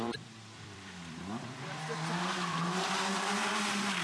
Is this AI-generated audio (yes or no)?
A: yes